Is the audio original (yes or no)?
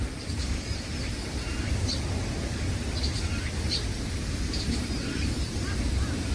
no